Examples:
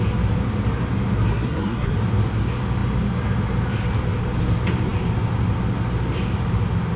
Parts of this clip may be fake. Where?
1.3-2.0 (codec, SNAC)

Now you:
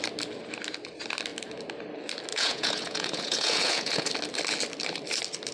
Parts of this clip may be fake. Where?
2.3-4.1 (vocoder, Vocos)

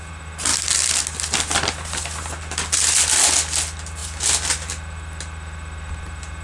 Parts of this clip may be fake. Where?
none

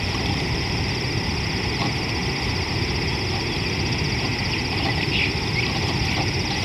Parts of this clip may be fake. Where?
0.0-2.2 (vocoder, BigVGAN v2); 3.4-4.3; 5.4-6.6